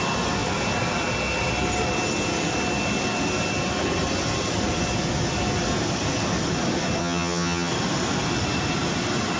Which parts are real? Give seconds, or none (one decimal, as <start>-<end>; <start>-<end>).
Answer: 0.0-7.0; 7.7-9.4